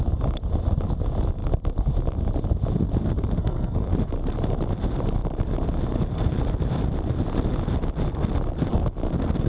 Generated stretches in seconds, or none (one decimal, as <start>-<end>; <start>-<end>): 3.4-3.9